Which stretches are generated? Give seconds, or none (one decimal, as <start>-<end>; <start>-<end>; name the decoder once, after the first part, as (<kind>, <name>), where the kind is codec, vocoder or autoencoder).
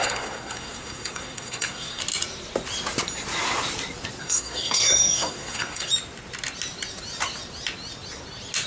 0.0-2.0 (codec, SNAC); 4.2-5.9